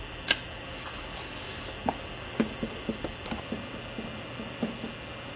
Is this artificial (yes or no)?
no